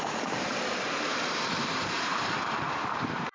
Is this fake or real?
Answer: fake